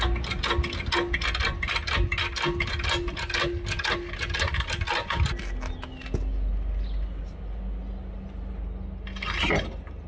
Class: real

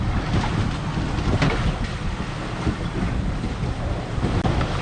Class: real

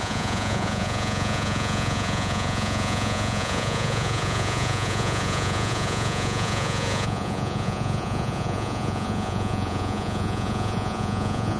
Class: fake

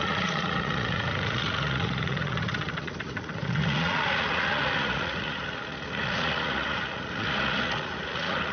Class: fake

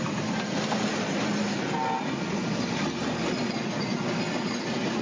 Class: real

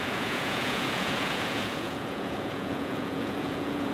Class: fake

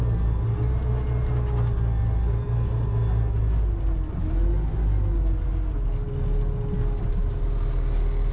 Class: real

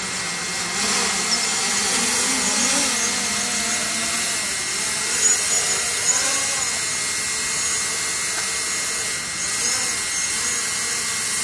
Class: real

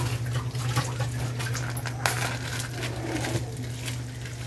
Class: real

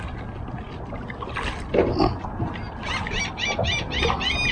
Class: real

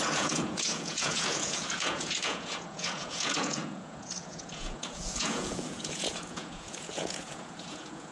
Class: fake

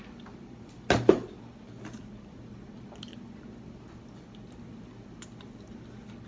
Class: real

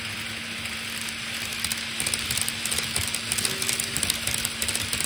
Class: real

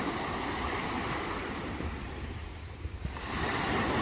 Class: real